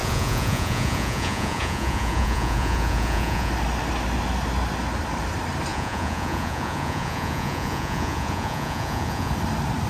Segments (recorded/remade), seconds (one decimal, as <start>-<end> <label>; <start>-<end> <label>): 0.0-3.5 remade; 3.5-5.7 recorded; 5.7-9.3 remade; 9.3-9.9 recorded